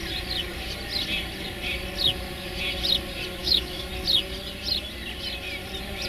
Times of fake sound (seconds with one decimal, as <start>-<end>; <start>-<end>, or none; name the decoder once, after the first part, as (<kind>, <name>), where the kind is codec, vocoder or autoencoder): 3.4-3.9 (autoencoder, DAC-VAE)